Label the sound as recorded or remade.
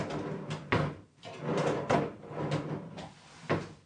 recorded